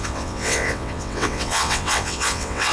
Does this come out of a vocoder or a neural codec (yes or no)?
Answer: yes